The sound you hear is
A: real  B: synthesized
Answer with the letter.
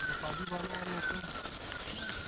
A